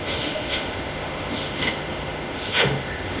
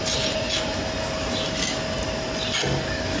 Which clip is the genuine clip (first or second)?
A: second